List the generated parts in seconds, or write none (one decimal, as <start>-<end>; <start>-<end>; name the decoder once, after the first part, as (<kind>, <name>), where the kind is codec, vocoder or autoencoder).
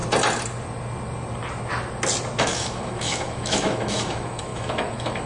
2.4-5.3 (autoencoder, DAC-VAE)